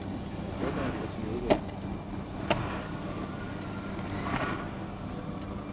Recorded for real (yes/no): yes